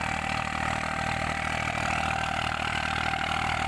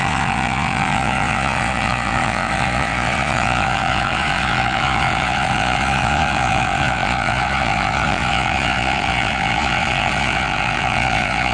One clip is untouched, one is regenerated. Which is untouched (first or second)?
first